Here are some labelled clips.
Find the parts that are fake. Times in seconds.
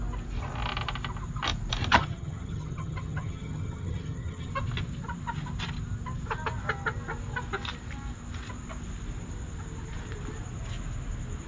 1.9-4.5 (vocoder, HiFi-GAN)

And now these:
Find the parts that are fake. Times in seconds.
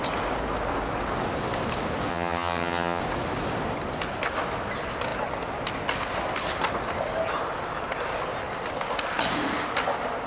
2.1-3.0 (vocoder, HiFi-GAN)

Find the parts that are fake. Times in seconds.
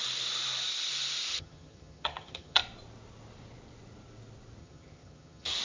1.3-2.6 (vocoder, HiFi-GAN); 4.6-5.6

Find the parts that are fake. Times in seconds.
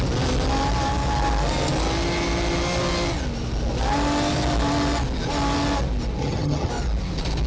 6.2-6.7 (vocoder, HiFi-GAN)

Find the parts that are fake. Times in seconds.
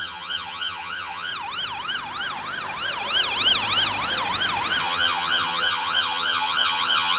0.0-1.3 (vocoder, HiFi-GAN); 4.8-7.2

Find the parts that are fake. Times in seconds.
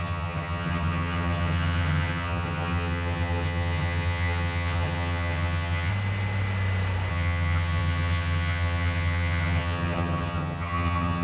0.0-5.9 (vocoder, HiFi-GAN); 7.1-11.2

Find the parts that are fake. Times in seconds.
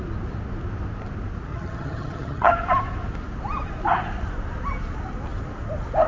1.5-2.5 (vocoder, HiFi-GAN)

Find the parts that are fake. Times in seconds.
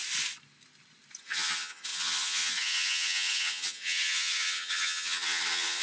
1.2-5.8 (vocoder, HiFi-GAN)